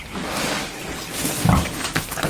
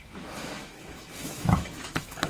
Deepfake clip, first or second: second